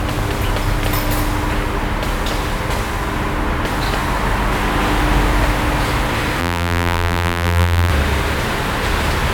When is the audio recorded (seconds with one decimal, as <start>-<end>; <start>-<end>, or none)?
0.0-6.4; 7.9-9.3